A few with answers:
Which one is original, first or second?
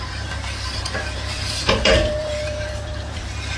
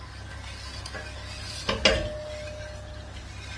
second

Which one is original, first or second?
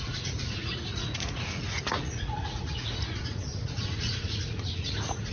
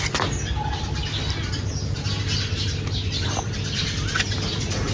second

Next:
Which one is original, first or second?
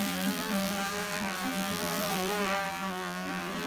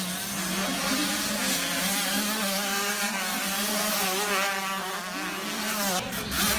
second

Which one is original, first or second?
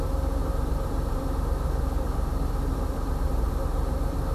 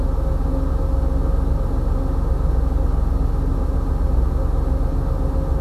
second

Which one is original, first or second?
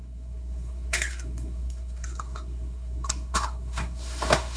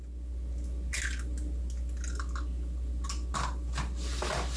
second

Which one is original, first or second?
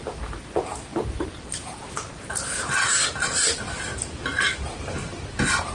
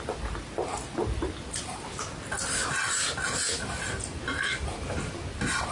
second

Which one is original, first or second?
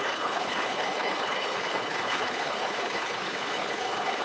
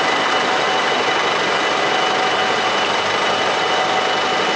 second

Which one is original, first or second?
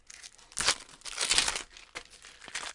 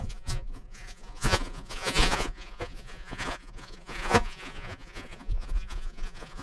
first